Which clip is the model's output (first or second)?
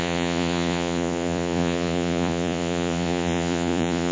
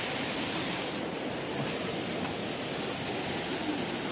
first